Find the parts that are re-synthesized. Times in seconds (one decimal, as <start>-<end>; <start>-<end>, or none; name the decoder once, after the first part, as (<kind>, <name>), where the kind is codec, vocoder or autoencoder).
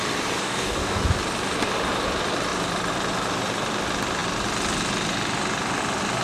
0.4-1.0 (codec, DAC)